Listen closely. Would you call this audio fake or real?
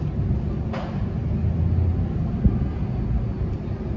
real